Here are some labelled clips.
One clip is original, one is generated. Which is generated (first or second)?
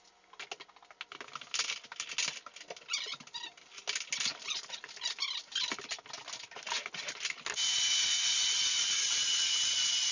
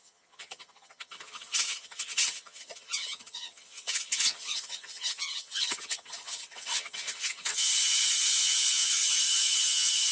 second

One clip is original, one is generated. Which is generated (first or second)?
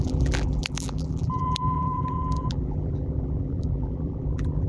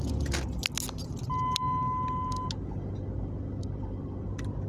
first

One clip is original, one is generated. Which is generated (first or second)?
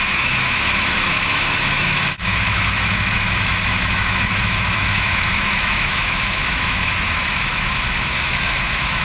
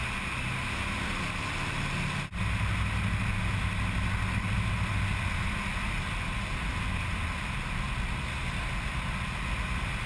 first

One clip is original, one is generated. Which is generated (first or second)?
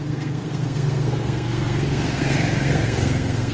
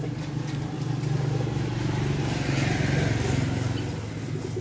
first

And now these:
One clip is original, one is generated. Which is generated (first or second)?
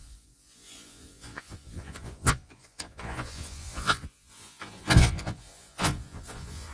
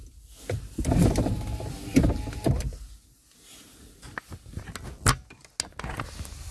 first